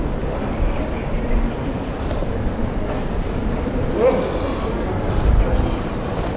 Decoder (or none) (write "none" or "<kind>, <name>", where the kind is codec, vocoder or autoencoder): none